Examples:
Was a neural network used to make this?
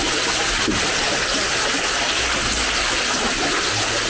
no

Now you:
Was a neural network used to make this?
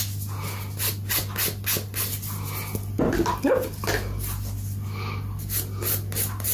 no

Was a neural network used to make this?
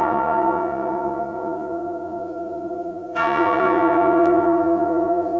yes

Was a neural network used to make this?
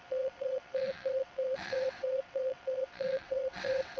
yes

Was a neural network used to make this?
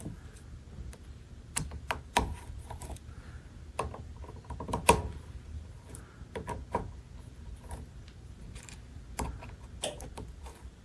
no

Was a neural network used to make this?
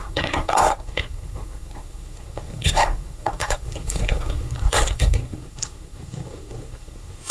yes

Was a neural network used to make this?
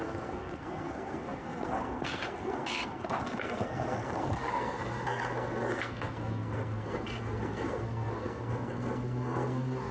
yes